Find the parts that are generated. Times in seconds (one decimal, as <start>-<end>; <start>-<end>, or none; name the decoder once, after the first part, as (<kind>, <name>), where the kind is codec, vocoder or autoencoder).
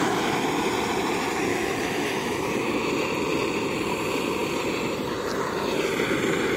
1.5-2.9 (autoencoder, DAC-VAE)